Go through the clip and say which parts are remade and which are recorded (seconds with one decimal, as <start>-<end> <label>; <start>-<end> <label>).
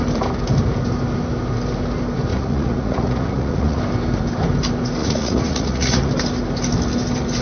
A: 0.0-2.3 recorded; 2.3-3.8 remade; 3.8-5.0 recorded; 5.0-6.1 remade; 6.1-7.4 recorded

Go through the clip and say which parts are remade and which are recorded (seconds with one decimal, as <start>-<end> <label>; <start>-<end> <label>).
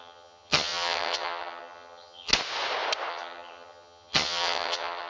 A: 0.0-2.3 remade; 2.3-3.1 recorded; 3.1-5.1 remade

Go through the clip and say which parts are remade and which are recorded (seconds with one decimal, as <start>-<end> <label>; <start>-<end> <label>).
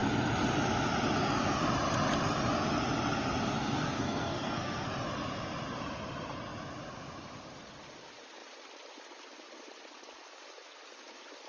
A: 0.0-3.6 recorded; 3.6-4.9 remade; 4.9-11.5 recorded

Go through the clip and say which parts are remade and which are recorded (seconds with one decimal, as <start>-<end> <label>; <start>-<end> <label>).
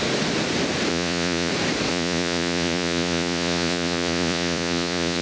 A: 0.0-0.9 recorded; 0.9-1.5 remade; 1.5-1.9 recorded; 1.9-5.2 remade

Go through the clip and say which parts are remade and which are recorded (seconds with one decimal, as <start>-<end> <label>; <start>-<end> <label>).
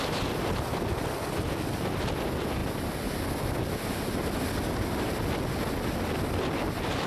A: 0.0-7.1 recorded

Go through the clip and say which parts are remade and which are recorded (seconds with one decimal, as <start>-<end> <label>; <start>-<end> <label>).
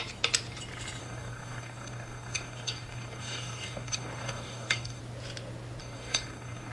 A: 0.0-1.0 recorded; 1.0-5.0 remade; 5.0-5.8 recorded; 5.8-6.7 remade